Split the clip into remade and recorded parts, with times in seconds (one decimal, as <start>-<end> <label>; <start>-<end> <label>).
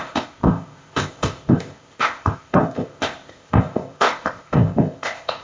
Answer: 0.0-5.4 remade